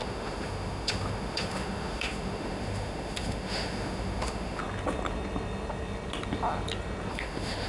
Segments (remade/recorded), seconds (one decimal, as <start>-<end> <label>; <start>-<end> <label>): 0.0-4.6 remade; 4.6-7.1 recorded; 7.1-7.7 remade